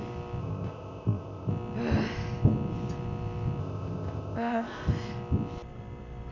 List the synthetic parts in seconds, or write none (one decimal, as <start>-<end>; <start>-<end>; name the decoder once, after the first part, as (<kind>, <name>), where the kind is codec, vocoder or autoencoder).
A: 0.4-1.5 (codec, ZipCodec); 3.6-4.9